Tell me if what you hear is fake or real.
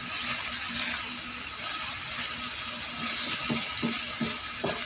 real